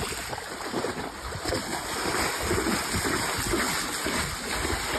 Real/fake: real